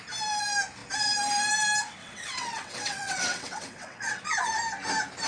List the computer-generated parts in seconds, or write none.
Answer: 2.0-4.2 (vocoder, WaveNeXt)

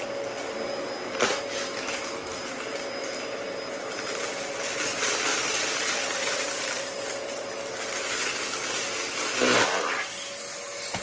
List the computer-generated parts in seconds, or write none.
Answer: 5.3-6.8 (vocoder, BigVGAN v2)

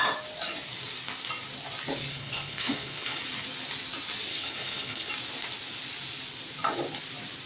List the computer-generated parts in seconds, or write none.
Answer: 2.1-3.2 (codec, HILCodec); 4.3-5.1